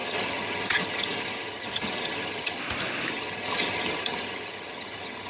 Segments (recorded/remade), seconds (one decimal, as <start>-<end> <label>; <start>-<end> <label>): 0.0-2.6 remade; 2.6-3.1 recorded; 3.1-5.3 remade